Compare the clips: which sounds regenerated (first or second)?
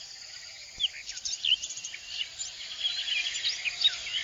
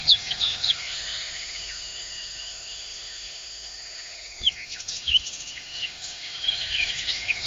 second